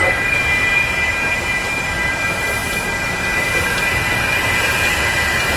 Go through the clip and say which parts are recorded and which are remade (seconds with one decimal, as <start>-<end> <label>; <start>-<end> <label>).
0.0-5.6 recorded